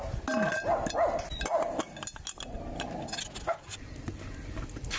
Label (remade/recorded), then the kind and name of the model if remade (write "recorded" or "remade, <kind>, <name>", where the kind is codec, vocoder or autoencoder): recorded